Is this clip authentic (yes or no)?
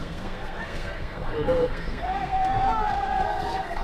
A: no